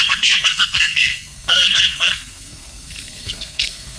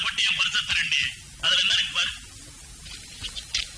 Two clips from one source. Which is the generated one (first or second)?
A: first